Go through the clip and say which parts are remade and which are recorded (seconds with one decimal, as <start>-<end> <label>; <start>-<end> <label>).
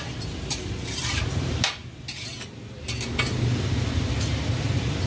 0.0-1.8 remade; 1.8-5.1 recorded